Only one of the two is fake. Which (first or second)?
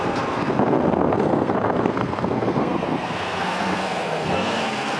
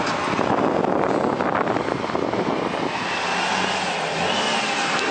first